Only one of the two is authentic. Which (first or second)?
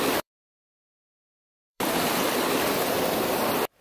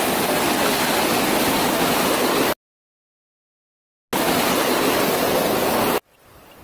second